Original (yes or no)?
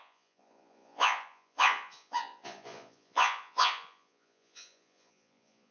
no